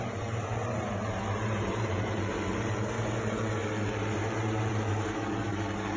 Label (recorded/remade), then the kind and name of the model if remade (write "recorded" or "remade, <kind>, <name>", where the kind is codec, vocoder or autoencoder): remade, vocoder, BigVGAN v2